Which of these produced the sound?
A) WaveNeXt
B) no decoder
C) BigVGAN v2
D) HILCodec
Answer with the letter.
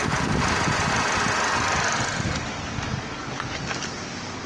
B